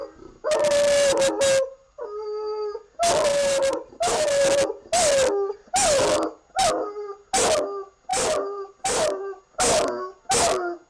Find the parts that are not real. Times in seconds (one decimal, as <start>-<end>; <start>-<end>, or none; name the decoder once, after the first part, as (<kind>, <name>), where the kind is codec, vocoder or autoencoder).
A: 0.0-0.5 (vocoder, BigVGAN v2); 3.3-4.4; 8.1-9.2